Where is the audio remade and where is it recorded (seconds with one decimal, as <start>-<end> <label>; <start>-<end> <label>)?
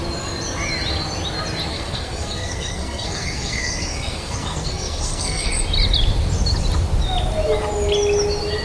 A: 0.0-1.7 recorded; 1.7-5.5 remade; 5.5-8.6 recorded